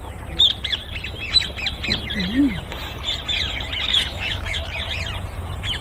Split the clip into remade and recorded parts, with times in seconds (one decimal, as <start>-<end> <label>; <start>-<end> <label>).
0.0-3.9 recorded; 3.9-4.6 remade; 4.6-5.8 recorded